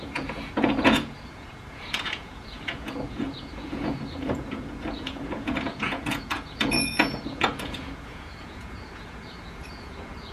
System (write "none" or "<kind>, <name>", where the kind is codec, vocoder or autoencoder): vocoder, Vocos